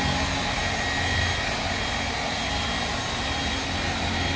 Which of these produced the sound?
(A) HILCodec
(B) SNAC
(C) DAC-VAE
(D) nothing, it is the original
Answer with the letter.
D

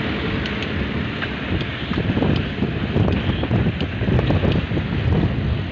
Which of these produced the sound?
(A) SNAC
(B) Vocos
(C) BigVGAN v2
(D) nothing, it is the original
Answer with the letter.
D